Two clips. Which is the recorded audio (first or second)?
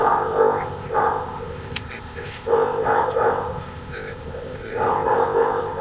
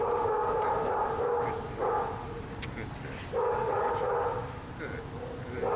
second